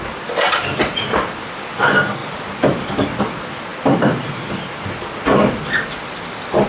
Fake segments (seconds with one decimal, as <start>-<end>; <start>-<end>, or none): none